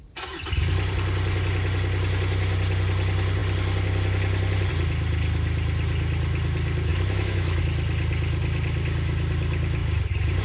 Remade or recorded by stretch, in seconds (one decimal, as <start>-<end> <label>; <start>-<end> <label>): 0.0-6.9 recorded; 6.9-7.6 remade; 7.6-10.4 recorded